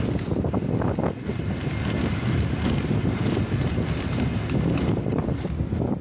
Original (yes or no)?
yes